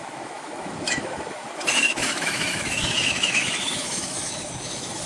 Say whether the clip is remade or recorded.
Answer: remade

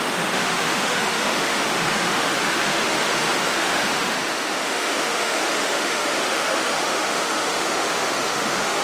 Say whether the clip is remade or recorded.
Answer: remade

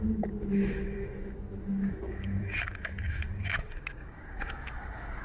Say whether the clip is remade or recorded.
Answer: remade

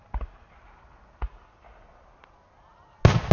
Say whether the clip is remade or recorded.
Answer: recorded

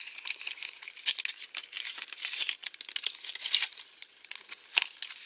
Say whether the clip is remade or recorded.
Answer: recorded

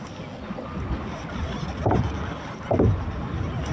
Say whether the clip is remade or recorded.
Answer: recorded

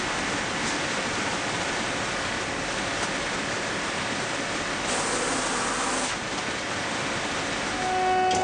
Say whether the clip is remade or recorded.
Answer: recorded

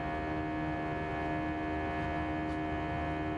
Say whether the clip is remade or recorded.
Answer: recorded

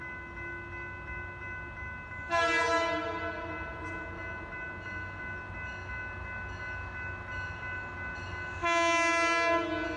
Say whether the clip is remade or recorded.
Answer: recorded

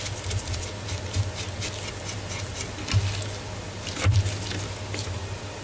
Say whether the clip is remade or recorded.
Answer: recorded